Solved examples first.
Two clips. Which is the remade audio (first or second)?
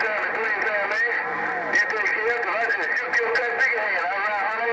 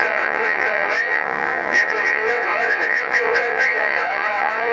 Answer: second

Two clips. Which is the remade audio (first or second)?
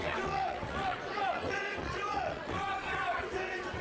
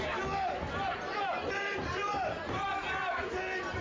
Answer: first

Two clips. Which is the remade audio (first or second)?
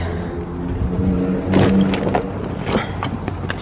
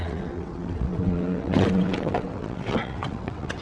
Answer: second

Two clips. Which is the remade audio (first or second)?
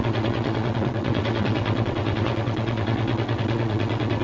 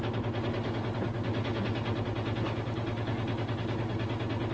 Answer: first